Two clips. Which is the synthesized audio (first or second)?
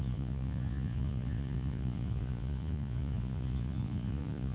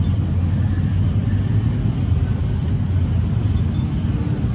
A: first